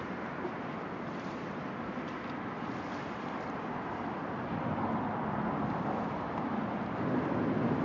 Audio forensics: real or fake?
fake